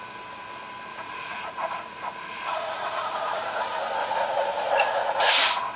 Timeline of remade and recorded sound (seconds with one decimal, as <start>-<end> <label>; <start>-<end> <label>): 0.0-0.9 recorded; 0.9-3.6 remade; 3.6-4.0 recorded; 4.0-5.3 remade; 5.3-5.8 recorded